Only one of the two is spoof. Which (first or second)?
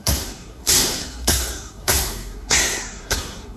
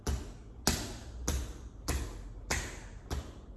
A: first